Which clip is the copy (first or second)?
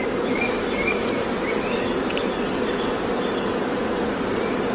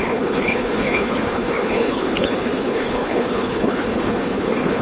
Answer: second